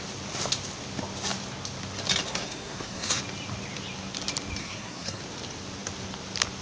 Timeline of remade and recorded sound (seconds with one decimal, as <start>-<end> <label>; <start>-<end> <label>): 0.0-2.3 recorded; 2.3-3.2 remade; 3.2-4.6 recorded; 4.6-5.2 remade; 5.2-6.6 recorded